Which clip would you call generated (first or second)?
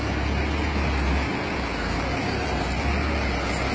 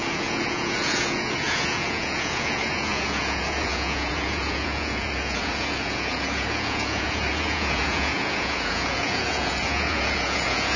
second